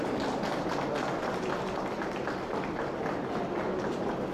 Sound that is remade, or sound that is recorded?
recorded